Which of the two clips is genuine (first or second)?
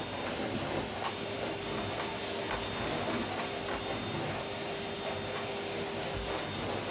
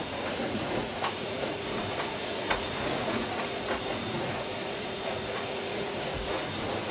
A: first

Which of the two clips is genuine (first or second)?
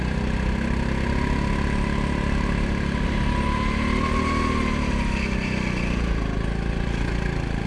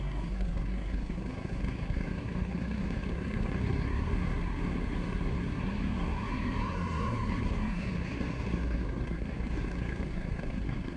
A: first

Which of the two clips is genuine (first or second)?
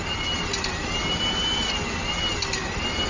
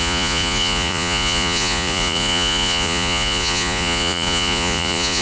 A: first